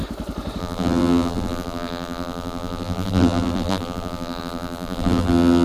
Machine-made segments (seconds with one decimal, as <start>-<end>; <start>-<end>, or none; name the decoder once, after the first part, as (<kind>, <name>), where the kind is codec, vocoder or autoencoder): 0.6-5.6 (vocoder, BigVGAN v2)